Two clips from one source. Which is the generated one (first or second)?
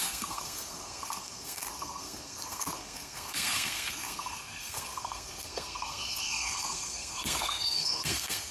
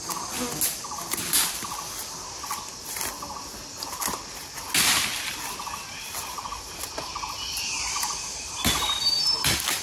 first